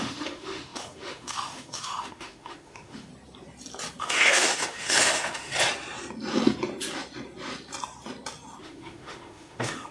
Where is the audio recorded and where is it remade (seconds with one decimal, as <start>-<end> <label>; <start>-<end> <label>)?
0.0-3.1 remade; 3.1-4.0 recorded; 4.0-5.5 remade; 5.5-8.6 recorded; 8.6-9.9 remade

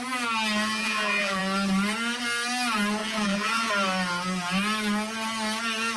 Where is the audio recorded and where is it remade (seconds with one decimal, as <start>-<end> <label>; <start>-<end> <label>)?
0.0-0.8 recorded; 0.8-1.4 remade; 1.4-3.0 recorded; 3.0-3.7 remade; 3.7-6.0 recorded